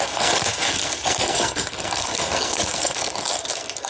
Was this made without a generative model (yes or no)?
no